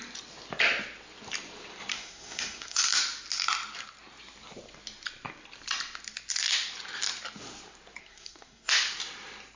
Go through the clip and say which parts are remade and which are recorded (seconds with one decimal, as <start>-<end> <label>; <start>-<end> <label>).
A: 0.0-1.9 recorded; 1.9-2.8 remade; 2.8-8.0 recorded; 8.0-8.7 remade; 8.7-9.6 recorded